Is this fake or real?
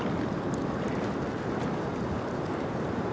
real